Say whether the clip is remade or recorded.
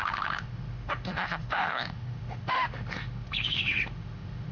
remade